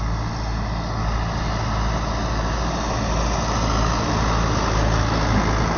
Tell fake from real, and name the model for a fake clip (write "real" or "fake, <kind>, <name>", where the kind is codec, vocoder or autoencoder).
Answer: real